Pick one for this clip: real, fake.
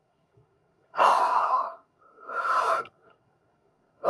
fake